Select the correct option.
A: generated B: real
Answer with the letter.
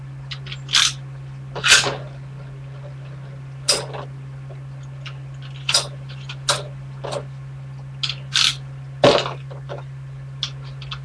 B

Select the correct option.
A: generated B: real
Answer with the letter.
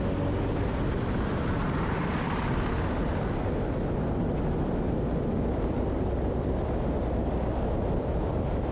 B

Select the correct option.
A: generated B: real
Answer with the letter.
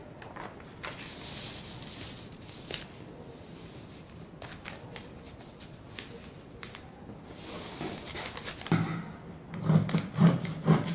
B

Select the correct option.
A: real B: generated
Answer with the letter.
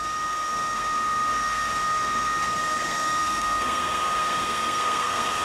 B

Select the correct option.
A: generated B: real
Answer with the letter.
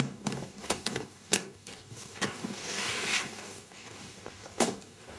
A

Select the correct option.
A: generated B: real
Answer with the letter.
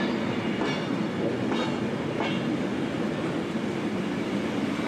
B